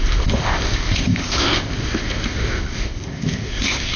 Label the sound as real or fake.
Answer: fake